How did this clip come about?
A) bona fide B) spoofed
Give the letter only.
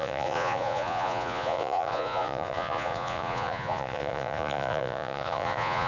B